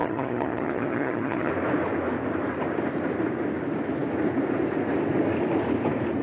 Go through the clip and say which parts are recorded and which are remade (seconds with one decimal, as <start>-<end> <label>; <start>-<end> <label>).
0.0-1.5 remade; 1.5-6.2 recorded